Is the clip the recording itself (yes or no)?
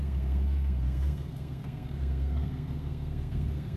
no